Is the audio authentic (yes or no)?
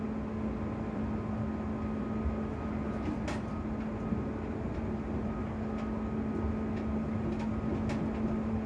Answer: yes